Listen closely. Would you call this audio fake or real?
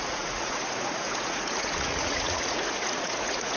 fake